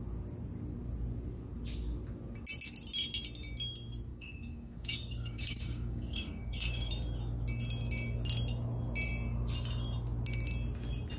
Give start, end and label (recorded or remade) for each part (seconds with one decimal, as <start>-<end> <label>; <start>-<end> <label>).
0.0-4.1 recorded; 4.1-6.9 remade; 6.9-11.2 recorded